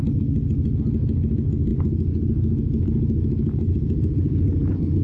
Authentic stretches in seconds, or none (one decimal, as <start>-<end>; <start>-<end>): 0.0-5.0